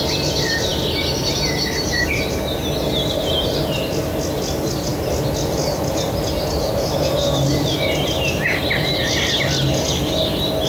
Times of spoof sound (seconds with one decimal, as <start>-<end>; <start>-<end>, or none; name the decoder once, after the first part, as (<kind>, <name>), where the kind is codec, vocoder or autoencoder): none